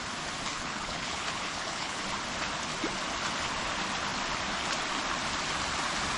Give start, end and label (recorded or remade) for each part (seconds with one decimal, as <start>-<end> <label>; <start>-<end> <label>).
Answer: 0.0-0.5 recorded; 0.5-2.0 remade; 2.0-6.2 recorded